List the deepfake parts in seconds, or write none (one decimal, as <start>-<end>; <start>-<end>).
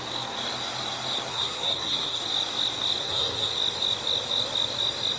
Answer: 1.3-2.2; 3.0-3.5